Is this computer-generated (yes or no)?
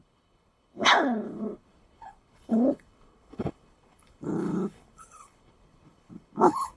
yes